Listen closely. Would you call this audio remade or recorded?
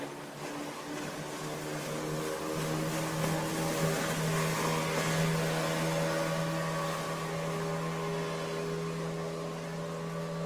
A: recorded